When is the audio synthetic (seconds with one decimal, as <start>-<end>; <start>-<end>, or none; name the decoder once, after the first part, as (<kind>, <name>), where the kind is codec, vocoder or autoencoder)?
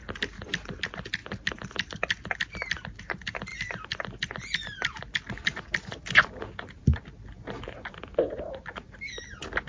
none